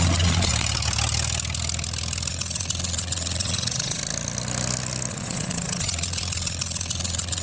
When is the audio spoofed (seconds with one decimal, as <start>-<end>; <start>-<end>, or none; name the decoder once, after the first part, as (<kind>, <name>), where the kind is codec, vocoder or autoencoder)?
0.0-0.5 (vocoder, Vocos); 2.3-4.0; 5.1-7.4